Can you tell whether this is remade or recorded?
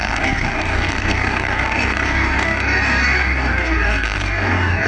remade